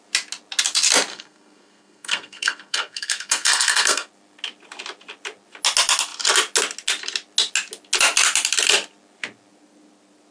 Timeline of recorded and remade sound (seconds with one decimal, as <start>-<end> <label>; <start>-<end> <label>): 0.0-1.1 recorded; 1.1-4.1 remade; 4.1-10.3 recorded